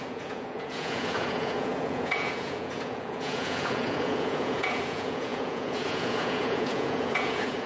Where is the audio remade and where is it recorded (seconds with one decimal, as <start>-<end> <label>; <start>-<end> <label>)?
0.0-7.7 remade